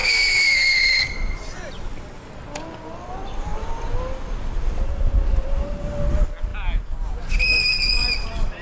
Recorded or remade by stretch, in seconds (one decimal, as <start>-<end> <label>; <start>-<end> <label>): 0.0-1.0 remade; 1.0-8.6 recorded